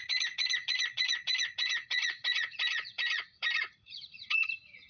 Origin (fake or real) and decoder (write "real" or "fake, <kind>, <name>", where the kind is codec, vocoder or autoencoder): fake, vocoder, Vocos